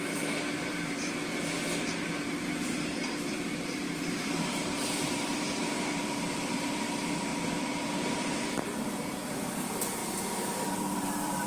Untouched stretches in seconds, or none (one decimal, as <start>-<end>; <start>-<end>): 1.0-2.2; 7.3-8.2; 10.0-10.8